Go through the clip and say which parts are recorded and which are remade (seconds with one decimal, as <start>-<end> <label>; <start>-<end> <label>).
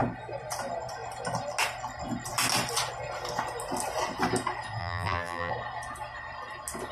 0.0-4.8 recorded; 4.8-5.5 remade; 5.5-6.9 recorded